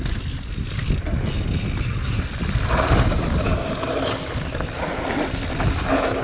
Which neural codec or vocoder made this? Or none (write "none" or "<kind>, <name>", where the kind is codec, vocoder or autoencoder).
none